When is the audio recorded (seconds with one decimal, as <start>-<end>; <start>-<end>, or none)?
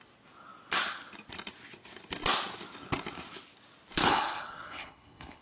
0.0-4.0